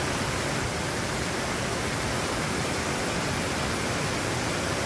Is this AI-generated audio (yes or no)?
no